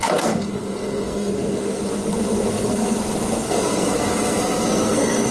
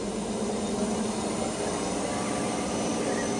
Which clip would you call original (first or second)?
second